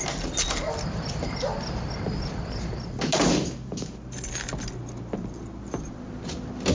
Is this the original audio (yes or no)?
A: yes